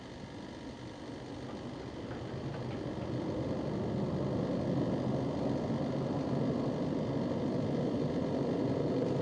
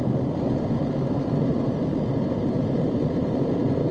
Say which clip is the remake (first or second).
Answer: second